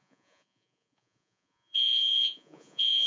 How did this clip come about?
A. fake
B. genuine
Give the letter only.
A